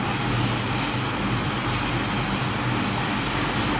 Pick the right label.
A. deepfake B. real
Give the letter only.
B